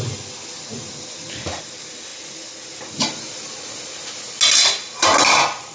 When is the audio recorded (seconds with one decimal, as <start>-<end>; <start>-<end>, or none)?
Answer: 0.0-5.7